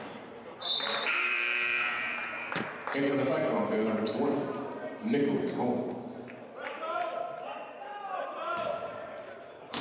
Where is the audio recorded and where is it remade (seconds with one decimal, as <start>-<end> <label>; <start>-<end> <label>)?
0.0-4.8 remade; 4.8-6.7 recorded; 6.7-9.8 remade